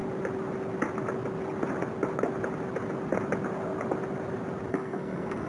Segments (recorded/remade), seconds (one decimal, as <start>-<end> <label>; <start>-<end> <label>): 0.0-4.7 recorded; 4.7-5.5 remade